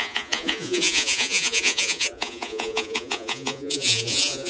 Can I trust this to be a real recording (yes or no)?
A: no